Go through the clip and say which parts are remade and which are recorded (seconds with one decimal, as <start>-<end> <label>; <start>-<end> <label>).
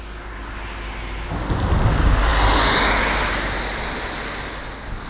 0.0-5.1 recorded